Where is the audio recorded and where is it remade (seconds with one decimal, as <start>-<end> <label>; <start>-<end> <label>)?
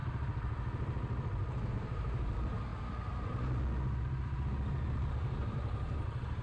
0.0-1.7 recorded; 1.7-2.7 remade; 2.7-5.1 recorded; 5.1-6.4 remade